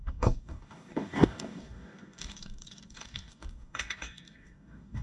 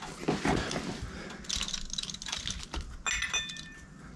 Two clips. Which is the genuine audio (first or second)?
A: second